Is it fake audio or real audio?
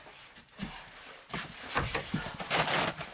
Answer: fake